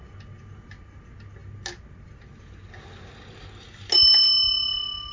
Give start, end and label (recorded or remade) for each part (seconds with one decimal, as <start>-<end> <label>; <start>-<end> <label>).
0.0-5.1 recorded